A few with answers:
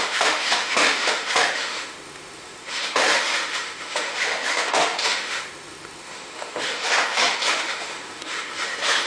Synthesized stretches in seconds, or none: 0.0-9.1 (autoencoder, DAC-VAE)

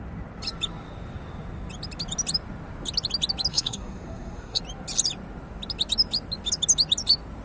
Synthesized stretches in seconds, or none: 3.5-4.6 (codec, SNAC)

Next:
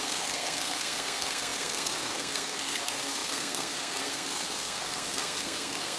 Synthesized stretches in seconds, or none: 0.0-6.0 (codec, SNAC)

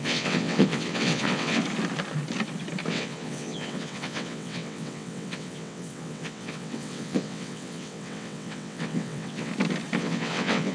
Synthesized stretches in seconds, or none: 0.0-1.6 (vocoder, WaveNeXt); 2.9-9.5; 10.0-10.7

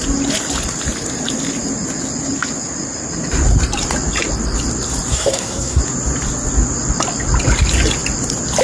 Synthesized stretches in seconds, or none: 5.1-5.8 (codec, SNAC)

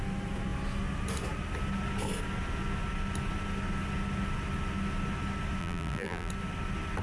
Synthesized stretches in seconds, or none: 5.6-6.3 (vocoder, BigVGAN v2)